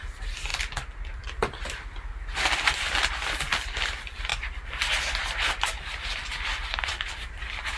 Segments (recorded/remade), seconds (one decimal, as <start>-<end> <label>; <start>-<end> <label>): 0.0-0.5 remade; 0.5-1.1 recorded; 1.1-4.3 remade; 4.3-5.5 recorded; 5.5-7.8 remade